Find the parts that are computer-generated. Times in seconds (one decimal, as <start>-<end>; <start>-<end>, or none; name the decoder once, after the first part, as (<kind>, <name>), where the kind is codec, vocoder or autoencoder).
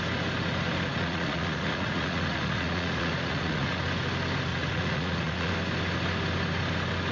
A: 0.9-3.8 (vocoder, Vocos); 4.5-5.5